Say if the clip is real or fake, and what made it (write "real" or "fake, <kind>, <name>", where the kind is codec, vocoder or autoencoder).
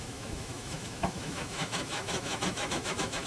fake, autoencoder, DAC-VAE